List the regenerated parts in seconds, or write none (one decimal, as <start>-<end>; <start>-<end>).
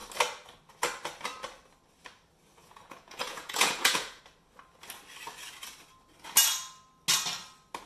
2.6-4.2